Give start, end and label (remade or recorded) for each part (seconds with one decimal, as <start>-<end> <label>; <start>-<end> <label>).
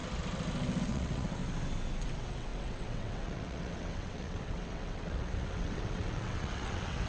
0.0-0.8 recorded; 0.8-1.4 remade; 1.4-2.0 recorded; 2.0-7.1 remade